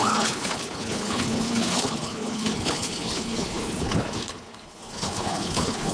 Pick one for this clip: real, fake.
fake